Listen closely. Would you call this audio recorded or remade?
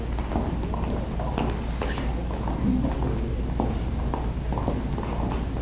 recorded